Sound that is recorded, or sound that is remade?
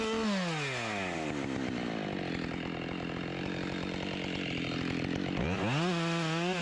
recorded